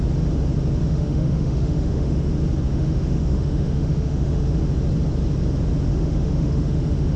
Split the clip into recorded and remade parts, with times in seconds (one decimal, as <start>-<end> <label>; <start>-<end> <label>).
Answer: 0.0-0.8 recorded; 0.8-2.3 remade; 2.3-2.7 recorded; 2.7-4.5 remade; 4.5-5.9 recorded; 5.9-7.2 remade